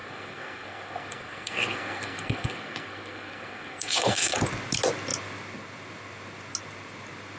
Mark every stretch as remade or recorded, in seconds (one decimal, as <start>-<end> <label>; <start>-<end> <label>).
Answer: 0.0-4.4 remade; 4.4-7.4 recorded